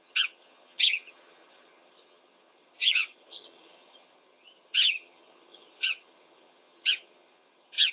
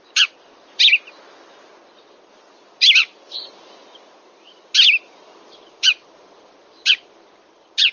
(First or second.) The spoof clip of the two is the first